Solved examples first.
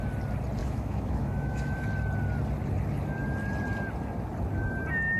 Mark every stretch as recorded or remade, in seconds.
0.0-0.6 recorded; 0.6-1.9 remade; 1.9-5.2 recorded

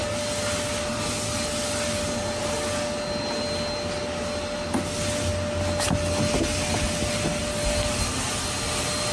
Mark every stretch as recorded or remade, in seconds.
0.0-9.1 recorded

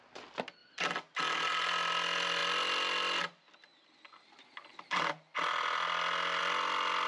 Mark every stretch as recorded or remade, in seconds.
0.0-7.1 recorded